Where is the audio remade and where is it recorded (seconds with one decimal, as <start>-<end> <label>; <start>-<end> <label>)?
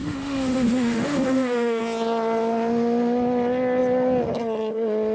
0.0-1.8 remade; 1.8-5.1 recorded